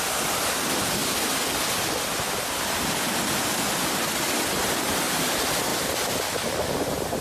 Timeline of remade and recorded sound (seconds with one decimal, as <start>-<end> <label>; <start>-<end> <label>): 0.0-7.2 recorded